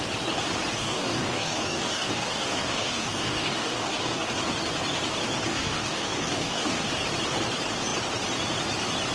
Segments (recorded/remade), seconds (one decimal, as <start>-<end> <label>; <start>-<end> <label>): 0.0-0.8 recorded; 0.8-4.3 remade; 4.3-5.5 recorded; 5.5-6.9 remade; 6.9-9.1 recorded